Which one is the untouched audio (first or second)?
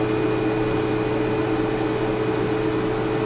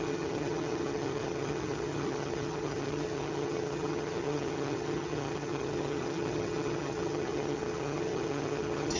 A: first